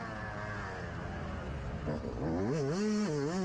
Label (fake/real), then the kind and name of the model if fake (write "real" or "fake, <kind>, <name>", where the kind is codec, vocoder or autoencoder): real